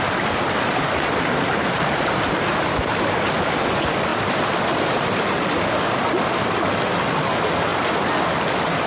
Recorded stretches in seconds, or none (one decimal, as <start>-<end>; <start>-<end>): 0.0-8.9